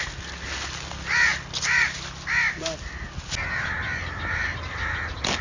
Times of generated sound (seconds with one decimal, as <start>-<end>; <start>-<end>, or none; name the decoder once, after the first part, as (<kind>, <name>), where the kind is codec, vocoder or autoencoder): none